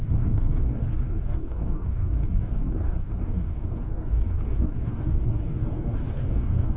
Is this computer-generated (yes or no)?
yes